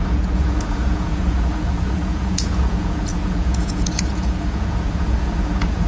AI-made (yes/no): yes